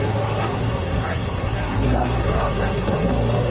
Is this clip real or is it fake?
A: fake